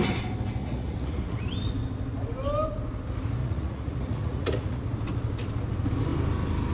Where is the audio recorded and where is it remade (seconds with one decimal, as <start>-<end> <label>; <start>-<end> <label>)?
0.0-0.6 recorded; 0.6-1.4 remade; 1.4-3.4 recorded; 3.4-4.8 remade; 4.8-6.7 recorded